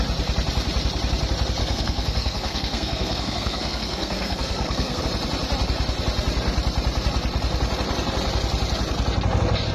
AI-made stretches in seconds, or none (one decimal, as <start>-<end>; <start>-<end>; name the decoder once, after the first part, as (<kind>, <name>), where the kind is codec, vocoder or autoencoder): 1.6-5.0 (codec, SNAC)

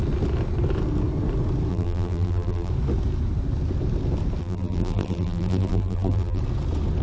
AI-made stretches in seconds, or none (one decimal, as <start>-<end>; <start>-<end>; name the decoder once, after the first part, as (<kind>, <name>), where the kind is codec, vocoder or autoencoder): 1.7-2.7 (vocoder, BigVGAN v2); 4.4-6.4